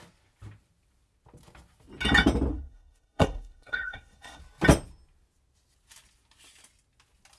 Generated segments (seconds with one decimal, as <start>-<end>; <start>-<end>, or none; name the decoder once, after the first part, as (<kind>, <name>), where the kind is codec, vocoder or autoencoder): 2.5-4.4 (codec, SNAC)